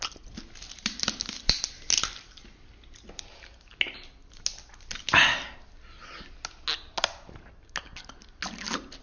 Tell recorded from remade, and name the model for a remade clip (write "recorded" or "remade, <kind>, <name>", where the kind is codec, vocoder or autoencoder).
recorded